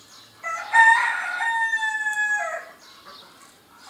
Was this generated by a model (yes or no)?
no